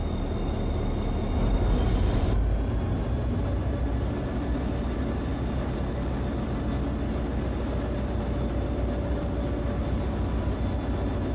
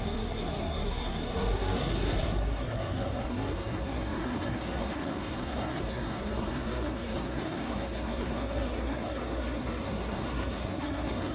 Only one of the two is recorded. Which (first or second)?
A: first